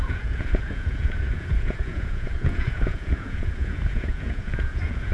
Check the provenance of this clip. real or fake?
fake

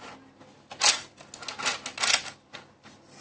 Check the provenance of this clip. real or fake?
real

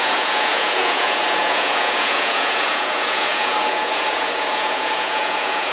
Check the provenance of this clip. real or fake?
fake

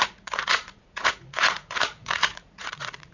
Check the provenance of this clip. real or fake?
fake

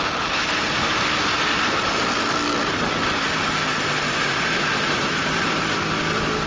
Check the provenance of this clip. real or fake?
real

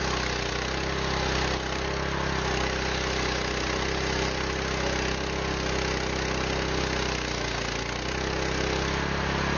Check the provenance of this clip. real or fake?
real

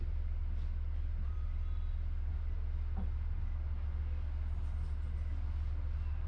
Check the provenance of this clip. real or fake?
real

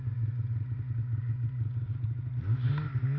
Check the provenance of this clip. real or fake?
real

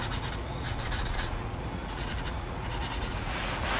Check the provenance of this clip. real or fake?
fake